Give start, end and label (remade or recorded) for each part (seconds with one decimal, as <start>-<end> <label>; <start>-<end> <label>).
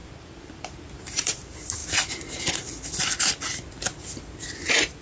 0.0-1.4 remade; 1.4-5.0 recorded